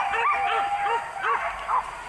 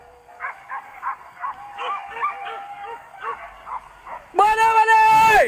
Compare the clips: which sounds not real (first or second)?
second